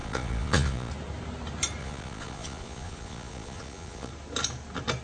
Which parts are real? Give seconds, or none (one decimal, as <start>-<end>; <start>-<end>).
0.9-1.8; 4.1-5.0